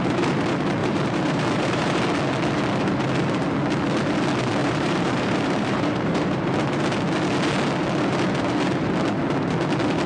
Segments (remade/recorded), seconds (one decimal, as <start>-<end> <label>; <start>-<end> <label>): 0.0-0.8 recorded; 0.8-2.0 remade; 2.0-4.6 recorded; 4.6-6.5 remade; 6.5-10.1 recorded